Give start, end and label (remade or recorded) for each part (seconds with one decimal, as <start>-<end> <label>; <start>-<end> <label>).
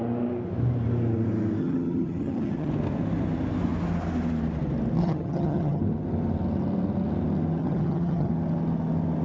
0.0-1.6 recorded; 1.6-2.7 remade; 2.7-5.0 recorded; 5.0-5.8 remade; 5.8-7.6 recorded; 7.6-8.3 remade; 8.3-9.2 recorded